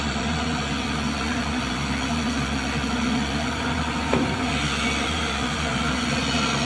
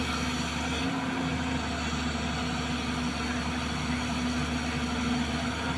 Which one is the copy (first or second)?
first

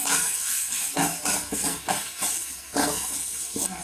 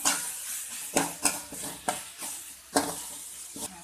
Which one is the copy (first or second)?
first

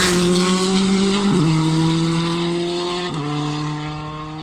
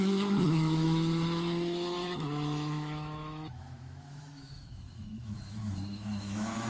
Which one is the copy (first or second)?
second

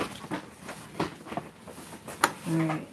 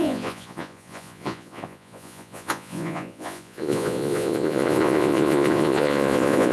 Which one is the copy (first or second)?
second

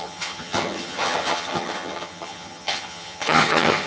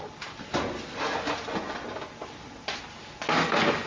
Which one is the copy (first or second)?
first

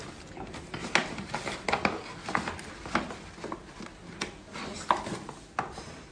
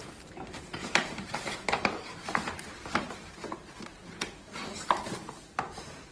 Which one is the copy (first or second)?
second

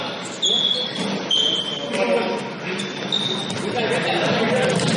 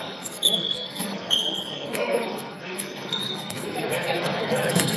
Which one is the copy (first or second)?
second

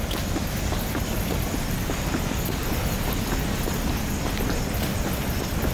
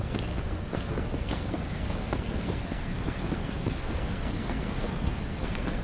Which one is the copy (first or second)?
second